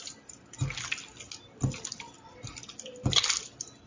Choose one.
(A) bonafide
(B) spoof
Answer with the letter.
A